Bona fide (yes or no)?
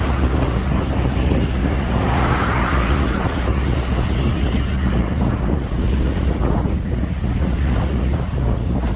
no